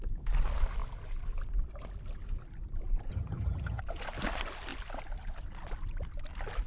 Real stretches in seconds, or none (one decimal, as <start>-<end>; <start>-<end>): 0.0-3.1; 3.8-6.7